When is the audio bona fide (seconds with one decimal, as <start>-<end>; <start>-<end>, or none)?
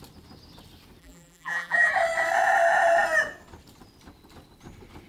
0.0-1.0; 1.9-5.1